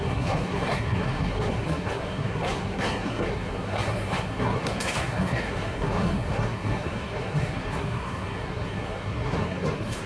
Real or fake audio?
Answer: fake